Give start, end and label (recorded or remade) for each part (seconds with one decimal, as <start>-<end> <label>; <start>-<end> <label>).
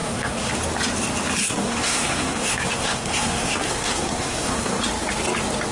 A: 0.0-0.5 remade; 0.5-1.4 recorded; 1.4-4.8 remade; 4.8-5.7 recorded